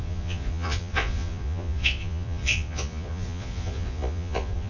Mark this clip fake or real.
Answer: fake